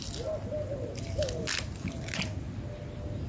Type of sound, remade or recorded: recorded